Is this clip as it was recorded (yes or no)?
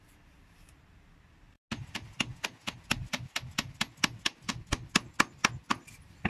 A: yes